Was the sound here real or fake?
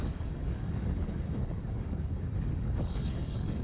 fake